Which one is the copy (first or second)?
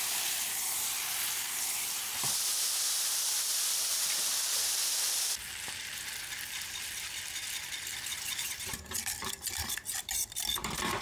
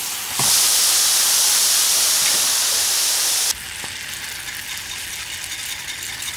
first